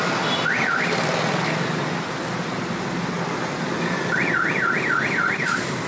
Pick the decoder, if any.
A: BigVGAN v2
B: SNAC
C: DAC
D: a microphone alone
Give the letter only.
D